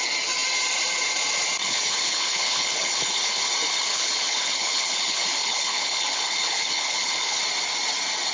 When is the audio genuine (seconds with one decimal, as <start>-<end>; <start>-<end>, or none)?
0.0-1.6; 3.5-3.9; 7.4-8.3